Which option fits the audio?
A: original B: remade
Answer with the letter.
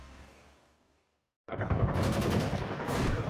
B